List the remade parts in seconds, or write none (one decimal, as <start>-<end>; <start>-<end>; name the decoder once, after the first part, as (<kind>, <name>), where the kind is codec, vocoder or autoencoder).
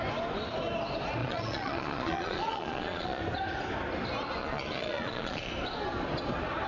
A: 1.2-3.2 (vocoder, Vocos); 4.4-5.5